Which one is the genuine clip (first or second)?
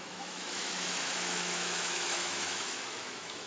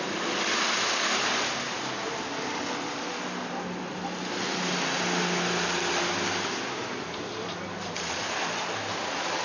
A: second